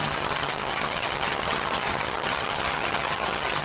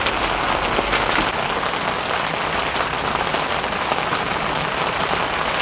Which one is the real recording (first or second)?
second